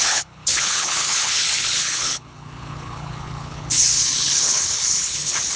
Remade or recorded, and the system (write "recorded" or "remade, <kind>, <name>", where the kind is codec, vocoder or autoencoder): remade, codec, HILCodec